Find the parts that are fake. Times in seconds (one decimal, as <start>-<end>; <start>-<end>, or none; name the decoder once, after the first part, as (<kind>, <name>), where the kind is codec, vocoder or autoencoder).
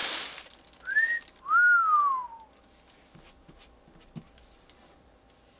none